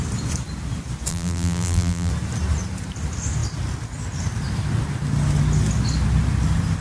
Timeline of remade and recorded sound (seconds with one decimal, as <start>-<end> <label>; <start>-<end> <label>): 0.0-1.1 recorded; 1.1-2.1 remade; 2.1-6.8 recorded